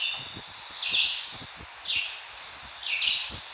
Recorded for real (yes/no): yes